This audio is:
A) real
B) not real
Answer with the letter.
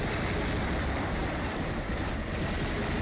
A